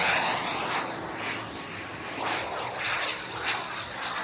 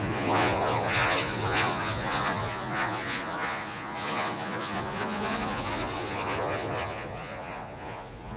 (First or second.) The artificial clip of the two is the second